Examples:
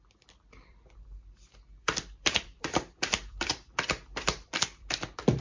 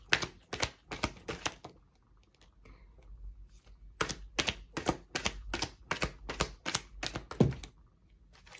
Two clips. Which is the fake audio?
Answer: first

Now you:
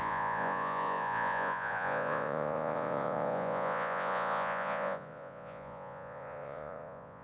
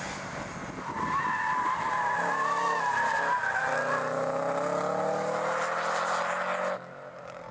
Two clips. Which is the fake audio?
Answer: first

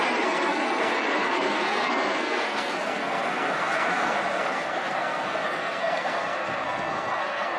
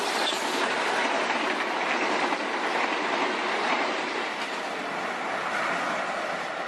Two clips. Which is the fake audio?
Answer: first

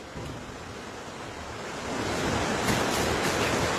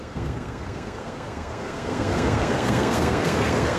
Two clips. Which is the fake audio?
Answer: second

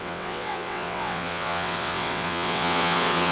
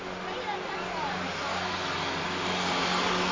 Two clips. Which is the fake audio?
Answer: first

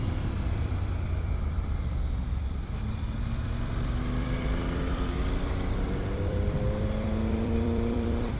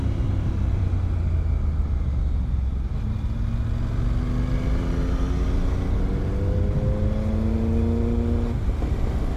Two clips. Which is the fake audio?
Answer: first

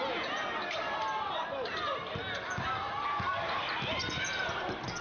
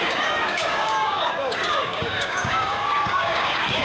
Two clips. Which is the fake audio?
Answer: second